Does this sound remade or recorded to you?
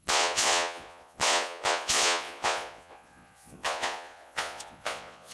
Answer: remade